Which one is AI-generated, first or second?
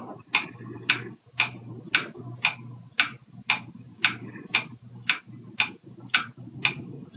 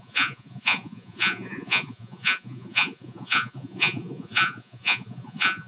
second